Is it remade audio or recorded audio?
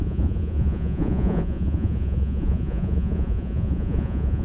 remade